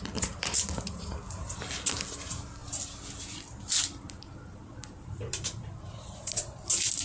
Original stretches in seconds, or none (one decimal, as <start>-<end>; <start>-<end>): 0.0-7.0